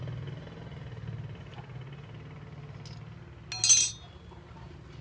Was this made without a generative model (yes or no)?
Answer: yes